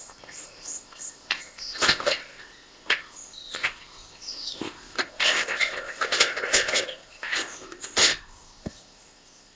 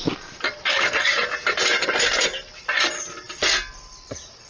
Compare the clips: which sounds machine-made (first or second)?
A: first